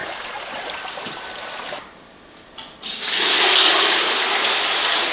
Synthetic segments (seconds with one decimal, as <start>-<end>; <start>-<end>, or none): none

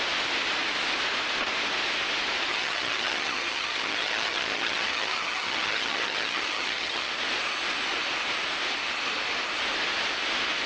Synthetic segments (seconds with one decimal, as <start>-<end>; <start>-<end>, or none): 2.5-7.1

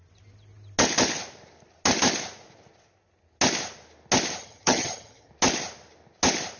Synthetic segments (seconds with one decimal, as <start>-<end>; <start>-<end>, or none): 4.4-5.3